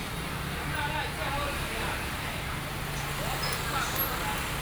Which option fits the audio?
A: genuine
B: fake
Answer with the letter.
A